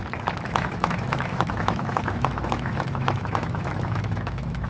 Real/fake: fake